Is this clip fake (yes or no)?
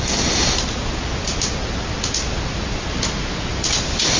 no